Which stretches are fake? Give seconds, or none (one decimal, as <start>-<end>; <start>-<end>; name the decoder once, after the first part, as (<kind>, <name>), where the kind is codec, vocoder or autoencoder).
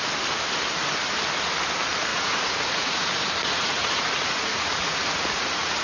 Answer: 2.1-5.8 (vocoder, Vocos)